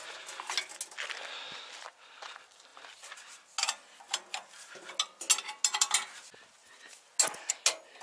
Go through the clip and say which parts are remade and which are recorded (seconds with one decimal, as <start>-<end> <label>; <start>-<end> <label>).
0.0-8.0 recorded